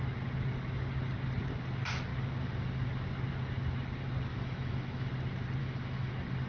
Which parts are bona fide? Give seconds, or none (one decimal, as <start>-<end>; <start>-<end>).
0.0-4.3; 5.1-5.6; 6.1-6.5